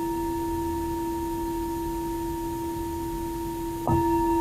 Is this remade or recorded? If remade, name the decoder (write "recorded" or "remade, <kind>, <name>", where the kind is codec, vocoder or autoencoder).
recorded